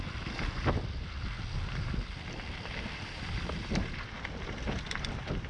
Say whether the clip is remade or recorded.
recorded